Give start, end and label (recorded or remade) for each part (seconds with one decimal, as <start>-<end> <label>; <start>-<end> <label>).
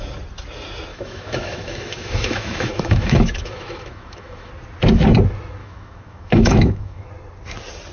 0.0-0.9 recorded; 0.9-4.5 remade; 4.5-5.6 recorded; 5.6-7.1 remade; 7.1-7.9 recorded